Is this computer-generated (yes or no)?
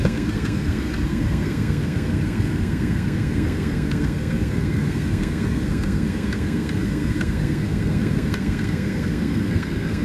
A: yes